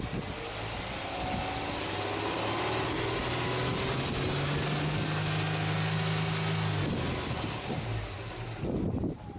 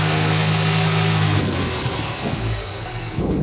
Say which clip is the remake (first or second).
second